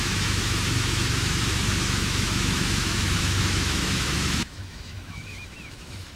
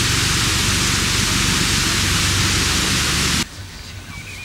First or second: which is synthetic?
first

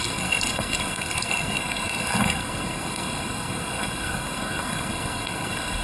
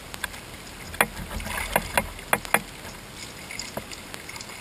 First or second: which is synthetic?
first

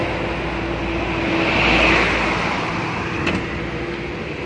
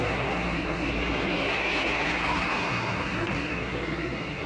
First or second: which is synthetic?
second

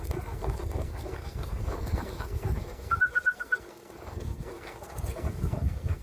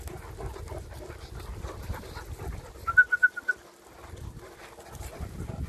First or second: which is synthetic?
first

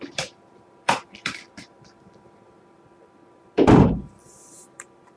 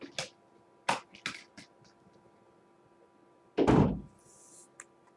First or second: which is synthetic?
first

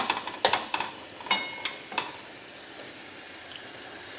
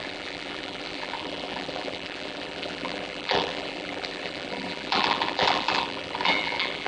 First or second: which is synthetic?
second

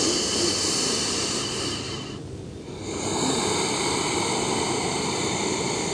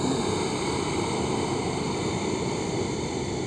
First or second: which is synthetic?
first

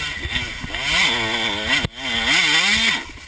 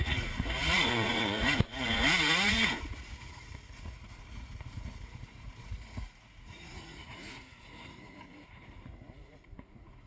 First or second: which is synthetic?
second